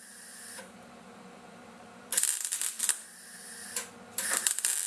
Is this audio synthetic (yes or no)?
yes